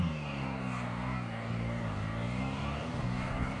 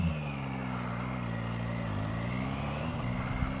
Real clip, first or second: second